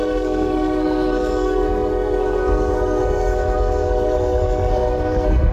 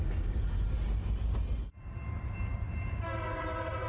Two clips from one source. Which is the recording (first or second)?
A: second